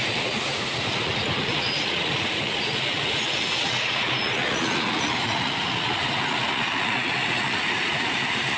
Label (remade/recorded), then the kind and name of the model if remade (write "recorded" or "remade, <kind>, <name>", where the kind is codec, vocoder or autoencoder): remade, vocoder, Vocos